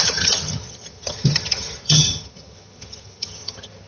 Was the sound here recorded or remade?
remade